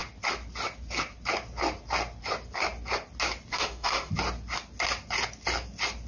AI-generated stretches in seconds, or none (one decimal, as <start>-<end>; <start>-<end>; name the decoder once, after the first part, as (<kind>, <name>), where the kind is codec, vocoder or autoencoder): 3.5-4.1 (autoencoder, DAC-VAE)